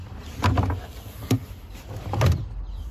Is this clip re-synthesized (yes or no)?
no